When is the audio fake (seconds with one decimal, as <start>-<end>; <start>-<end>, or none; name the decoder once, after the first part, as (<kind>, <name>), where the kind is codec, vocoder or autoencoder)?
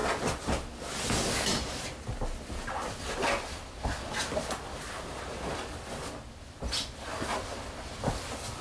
none